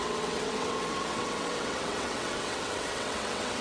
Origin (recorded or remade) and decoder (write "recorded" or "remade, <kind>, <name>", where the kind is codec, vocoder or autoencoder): remade, vocoder, WaveNeXt